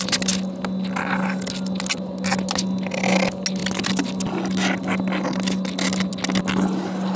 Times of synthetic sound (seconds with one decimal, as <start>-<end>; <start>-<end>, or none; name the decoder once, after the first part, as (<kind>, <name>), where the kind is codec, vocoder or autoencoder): none